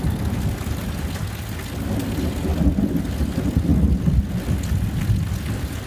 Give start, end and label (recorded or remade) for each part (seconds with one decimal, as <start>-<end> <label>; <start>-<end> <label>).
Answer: 0.0-5.9 recorded